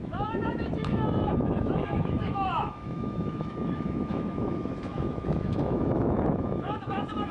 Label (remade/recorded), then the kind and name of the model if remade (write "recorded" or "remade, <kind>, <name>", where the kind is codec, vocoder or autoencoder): remade, autoencoder, DAC-VAE